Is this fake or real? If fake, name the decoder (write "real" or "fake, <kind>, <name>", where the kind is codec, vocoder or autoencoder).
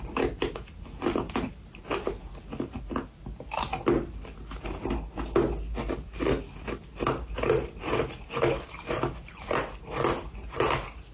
real